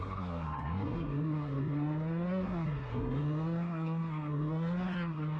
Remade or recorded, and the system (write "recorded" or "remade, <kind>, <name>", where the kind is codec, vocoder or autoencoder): remade, codec, SNAC